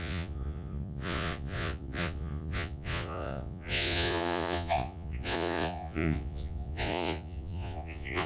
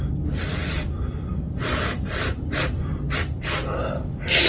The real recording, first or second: second